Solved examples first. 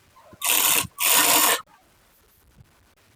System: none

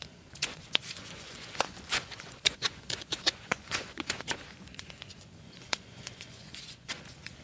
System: vocoder, Vocos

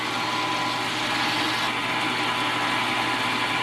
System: none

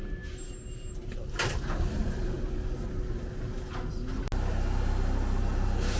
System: none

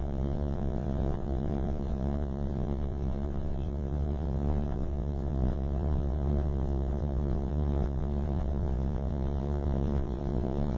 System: vocoder, WaveNeXt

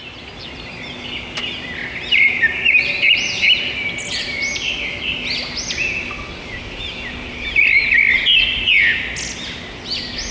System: none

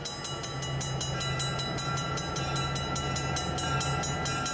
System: none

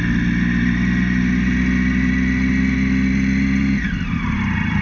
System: none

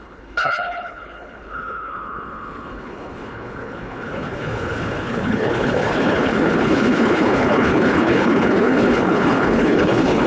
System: codec, HILCodec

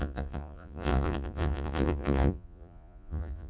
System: vocoder, Vocos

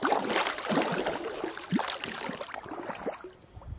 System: none